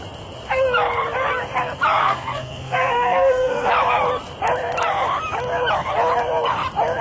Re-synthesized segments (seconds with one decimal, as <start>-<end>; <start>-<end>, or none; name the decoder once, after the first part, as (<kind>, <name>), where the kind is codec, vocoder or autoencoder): 2.0-3.7 (codec, SNAC)